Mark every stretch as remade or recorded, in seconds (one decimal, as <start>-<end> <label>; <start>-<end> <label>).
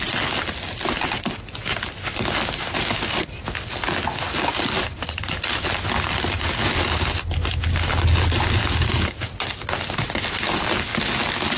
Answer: 0.0-11.6 recorded